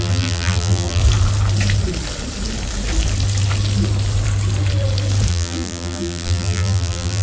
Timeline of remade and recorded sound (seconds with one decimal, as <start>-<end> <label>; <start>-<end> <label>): 0.0-1.0 remade; 1.0-5.3 recorded; 5.3-7.2 remade